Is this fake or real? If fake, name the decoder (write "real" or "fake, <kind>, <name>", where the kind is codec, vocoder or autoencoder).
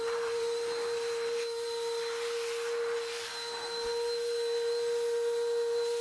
real